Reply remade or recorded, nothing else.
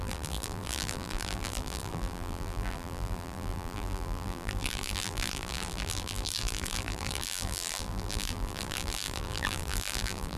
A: remade